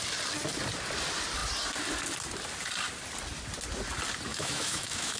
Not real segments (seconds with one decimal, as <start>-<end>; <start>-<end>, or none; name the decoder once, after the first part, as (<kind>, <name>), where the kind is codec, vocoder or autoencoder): 4.3-5.2 (autoencoder, DAC-VAE)